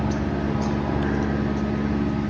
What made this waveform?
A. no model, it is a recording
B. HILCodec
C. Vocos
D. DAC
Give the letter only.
A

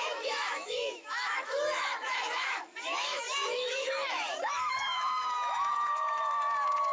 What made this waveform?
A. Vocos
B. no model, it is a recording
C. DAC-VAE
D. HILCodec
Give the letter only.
C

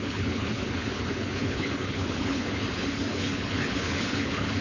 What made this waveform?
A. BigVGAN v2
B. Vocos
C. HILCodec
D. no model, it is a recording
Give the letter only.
C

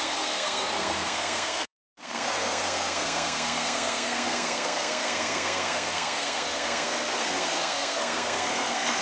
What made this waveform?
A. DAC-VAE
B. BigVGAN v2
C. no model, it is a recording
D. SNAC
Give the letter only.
D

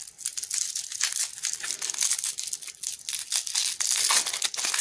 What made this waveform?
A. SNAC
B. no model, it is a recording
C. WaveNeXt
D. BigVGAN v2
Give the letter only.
B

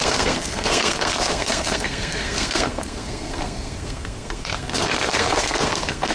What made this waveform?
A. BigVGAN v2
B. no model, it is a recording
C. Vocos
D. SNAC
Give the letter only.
D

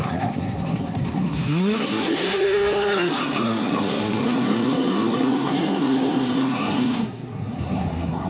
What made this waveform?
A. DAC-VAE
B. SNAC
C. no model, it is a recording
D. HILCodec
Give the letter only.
B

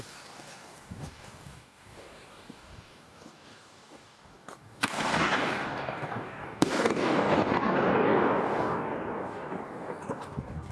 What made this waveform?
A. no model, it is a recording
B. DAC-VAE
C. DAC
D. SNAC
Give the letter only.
C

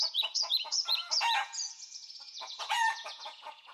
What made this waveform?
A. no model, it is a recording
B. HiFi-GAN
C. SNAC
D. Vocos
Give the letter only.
D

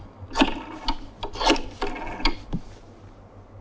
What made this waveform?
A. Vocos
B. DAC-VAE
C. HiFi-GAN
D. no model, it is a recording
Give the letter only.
D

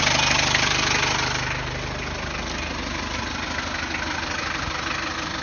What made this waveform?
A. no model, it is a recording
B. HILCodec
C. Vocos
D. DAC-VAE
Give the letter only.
A